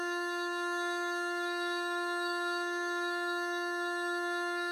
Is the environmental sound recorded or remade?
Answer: remade